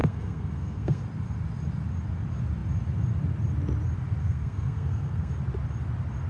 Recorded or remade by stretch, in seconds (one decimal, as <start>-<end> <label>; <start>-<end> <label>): 0.0-1.0 remade; 1.0-4.2 recorded; 4.2-5.3 remade; 5.3-6.3 recorded

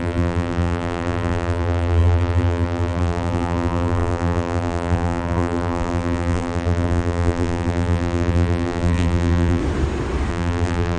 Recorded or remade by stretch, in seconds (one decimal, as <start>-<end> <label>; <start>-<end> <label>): 0.0-9.6 remade; 9.6-10.3 recorded; 10.3-11.0 remade

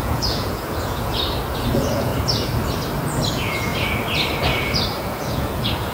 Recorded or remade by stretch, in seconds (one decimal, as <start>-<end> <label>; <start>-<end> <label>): 0.0-1.1 remade; 1.1-1.7 recorded; 1.7-2.1 remade; 2.1-3.3 recorded; 3.3-3.7 remade; 3.7-5.0 recorded; 5.0-5.9 remade

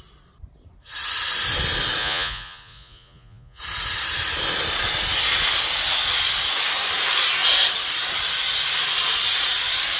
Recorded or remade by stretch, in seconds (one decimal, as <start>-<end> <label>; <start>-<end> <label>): 0.0-2.0 recorded; 2.0-3.6 remade; 3.6-10.0 recorded

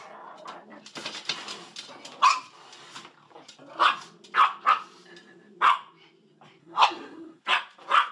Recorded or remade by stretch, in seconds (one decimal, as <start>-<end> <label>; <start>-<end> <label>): 0.0-6.6 recorded; 6.6-7.4 remade; 7.4-8.1 recorded

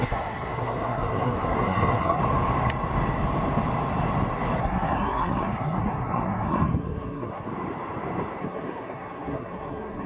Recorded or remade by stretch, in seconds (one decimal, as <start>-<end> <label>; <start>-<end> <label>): 0.0-2.2 remade; 2.2-4.6 recorded; 4.6-7.5 remade; 7.5-8.4 recorded; 8.4-10.1 remade